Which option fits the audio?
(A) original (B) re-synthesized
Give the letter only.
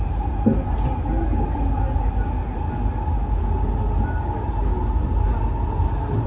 A